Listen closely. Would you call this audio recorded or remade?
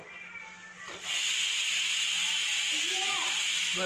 recorded